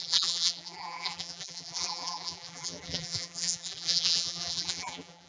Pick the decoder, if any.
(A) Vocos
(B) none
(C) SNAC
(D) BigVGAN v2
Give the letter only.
D